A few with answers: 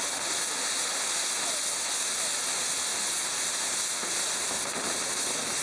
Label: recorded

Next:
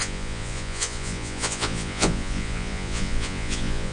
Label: remade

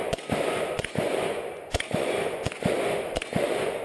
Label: remade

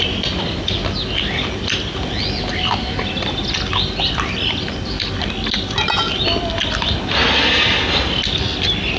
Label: recorded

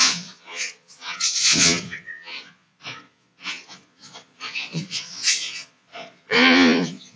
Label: remade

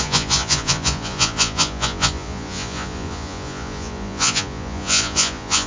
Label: remade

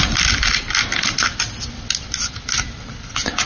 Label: recorded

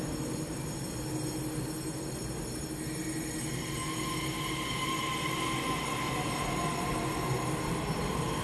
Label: recorded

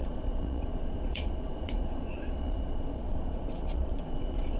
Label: remade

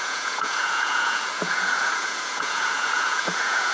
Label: remade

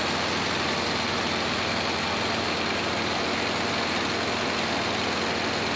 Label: recorded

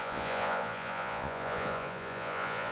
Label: remade